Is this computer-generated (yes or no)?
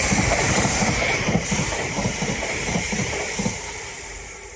yes